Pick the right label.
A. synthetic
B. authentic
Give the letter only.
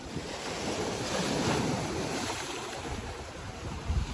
A